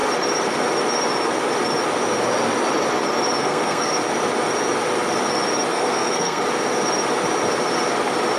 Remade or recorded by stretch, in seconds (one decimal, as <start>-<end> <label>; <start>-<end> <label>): 0.0-3.4 recorded; 3.4-3.9 remade; 3.9-5.7 recorded; 5.7-6.4 remade; 6.4-8.4 recorded